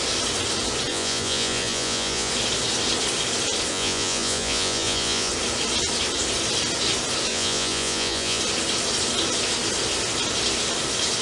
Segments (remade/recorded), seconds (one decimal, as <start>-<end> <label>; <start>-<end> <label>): 0.0-0.9 recorded; 0.9-2.3 remade; 2.3-3.7 recorded; 3.7-5.3 remade; 5.3-7.3 recorded; 7.3-8.4 remade; 8.4-11.2 recorded